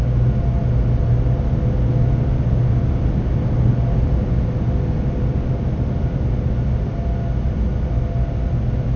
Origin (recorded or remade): recorded